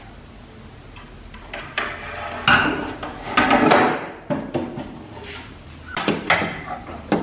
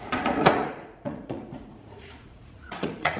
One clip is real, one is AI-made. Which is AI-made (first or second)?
second